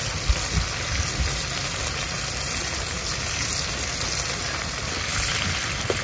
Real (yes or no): yes